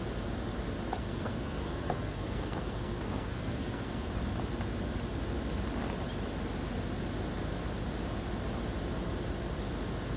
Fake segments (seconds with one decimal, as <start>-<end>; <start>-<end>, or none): 1.0-4.2